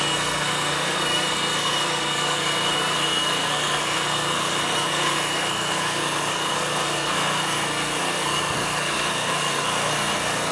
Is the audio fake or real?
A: fake